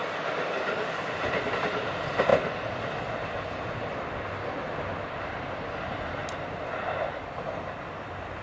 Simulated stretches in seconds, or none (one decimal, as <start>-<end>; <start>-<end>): none